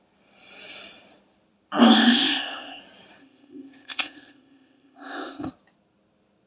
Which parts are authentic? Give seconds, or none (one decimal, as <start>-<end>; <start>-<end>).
0.0-1.8; 2.8-3.2; 5.5-6.5